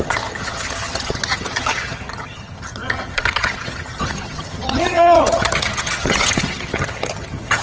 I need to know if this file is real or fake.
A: fake